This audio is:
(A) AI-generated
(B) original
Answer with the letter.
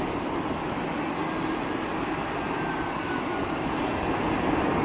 B